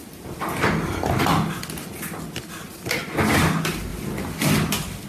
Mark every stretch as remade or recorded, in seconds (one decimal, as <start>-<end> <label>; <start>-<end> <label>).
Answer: 0.0-5.1 recorded

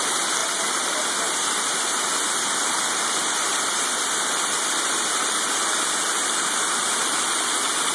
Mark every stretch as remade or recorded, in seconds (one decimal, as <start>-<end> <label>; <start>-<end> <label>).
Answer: 0.0-0.4 recorded; 0.4-5.1 remade; 5.1-6.2 recorded; 6.2-7.5 remade; 7.5-7.9 recorded

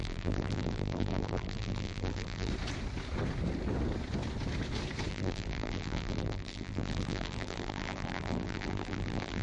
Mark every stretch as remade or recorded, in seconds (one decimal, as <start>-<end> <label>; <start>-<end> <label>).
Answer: 0.0-2.5 remade; 2.5-5.1 recorded; 5.1-9.4 remade

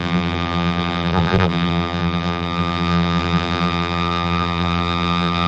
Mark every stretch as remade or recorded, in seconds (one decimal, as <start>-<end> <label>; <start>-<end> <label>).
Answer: 0.0-5.5 remade

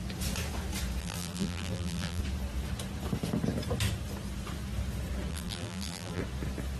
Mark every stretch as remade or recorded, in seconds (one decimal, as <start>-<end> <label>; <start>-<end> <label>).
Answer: 0.0-1.0 recorded; 1.0-2.2 remade; 2.2-5.3 recorded; 5.3-6.2 remade; 6.2-6.8 recorded

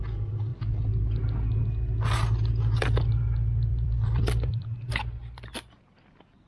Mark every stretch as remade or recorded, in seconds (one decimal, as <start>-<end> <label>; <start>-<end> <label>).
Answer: 0.0-3.7 recorded; 3.7-4.6 remade; 4.6-6.5 recorded

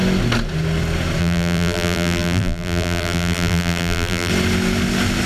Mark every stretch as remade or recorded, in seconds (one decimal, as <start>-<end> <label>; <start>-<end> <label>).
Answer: 0.0-1.2 recorded; 1.2-4.3 remade; 4.3-5.3 recorded

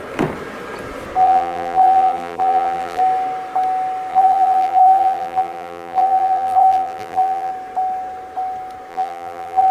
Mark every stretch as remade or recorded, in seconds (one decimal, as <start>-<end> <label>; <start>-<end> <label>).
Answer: 0.0-1.2 recorded; 1.2-3.0 remade; 3.0-4.1 recorded; 4.1-7.5 remade; 7.5-8.9 recorded; 8.9-9.7 remade